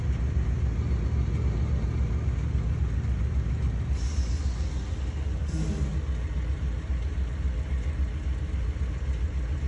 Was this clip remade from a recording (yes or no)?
no